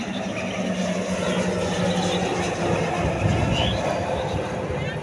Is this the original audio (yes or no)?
yes